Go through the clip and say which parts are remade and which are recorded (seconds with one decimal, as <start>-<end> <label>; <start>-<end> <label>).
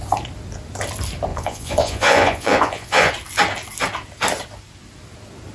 0.0-1.3 recorded; 1.3-3.1 remade; 3.1-5.5 recorded